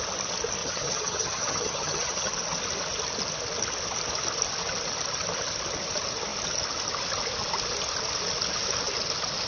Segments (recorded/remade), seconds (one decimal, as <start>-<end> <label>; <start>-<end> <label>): 0.0-0.6 recorded; 0.6-2.3 remade; 2.3-9.5 recorded

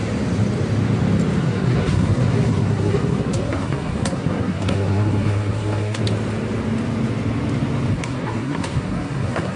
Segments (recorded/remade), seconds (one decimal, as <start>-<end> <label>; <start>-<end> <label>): 0.0-1.4 recorded; 1.4-6.0 remade; 6.0-7.9 recorded; 7.9-9.6 remade

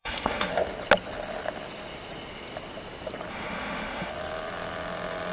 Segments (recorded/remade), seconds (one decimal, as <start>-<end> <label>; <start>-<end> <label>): 0.0-0.5 remade; 0.5-3.3 recorded; 3.3-4.1 remade; 4.1-5.3 recorded

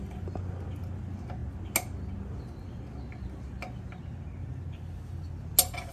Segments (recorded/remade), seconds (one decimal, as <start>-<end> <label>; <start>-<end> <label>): 0.0-5.9 recorded